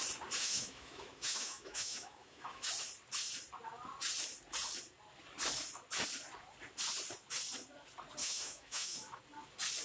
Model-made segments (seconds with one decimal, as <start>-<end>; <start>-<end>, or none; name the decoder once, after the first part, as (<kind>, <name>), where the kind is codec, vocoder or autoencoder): 0.4-2.7 (autoencoder, DAC-VAE); 8.2-9.2